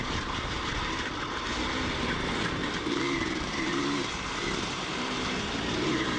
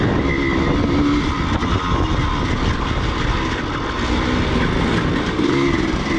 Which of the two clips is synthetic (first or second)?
first